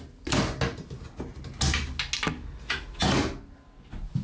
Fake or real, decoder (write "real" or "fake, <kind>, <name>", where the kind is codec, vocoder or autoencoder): real